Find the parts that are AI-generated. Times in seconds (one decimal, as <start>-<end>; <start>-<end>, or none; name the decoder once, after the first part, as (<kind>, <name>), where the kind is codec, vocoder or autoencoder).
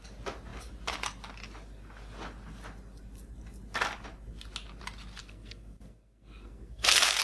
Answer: 5.2-7.2 (codec, SNAC)